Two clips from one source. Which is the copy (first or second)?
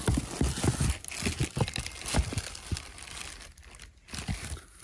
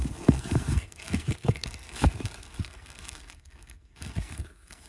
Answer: second